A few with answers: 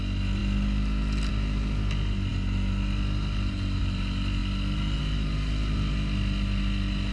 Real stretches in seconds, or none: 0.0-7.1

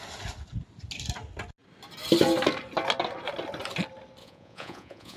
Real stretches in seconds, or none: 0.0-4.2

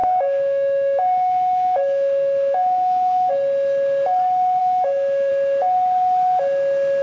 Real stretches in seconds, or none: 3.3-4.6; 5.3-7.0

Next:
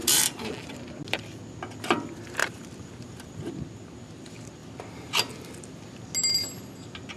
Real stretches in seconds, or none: 0.5-2.4; 3.5-7.2

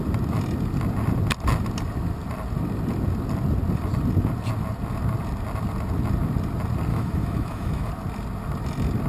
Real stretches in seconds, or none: 0.0-6.9; 7.9-9.1

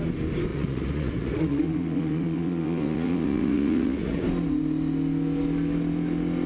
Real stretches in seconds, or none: 0.0-0.5; 4.2-6.5